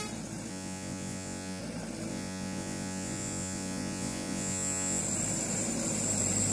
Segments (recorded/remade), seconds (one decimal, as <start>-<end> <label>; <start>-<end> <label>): 0.0-0.5 recorded; 0.5-1.6 remade; 1.6-2.1 recorded; 2.1-5.0 remade; 5.0-6.5 recorded